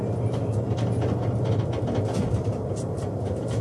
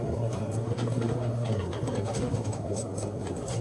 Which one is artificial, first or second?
second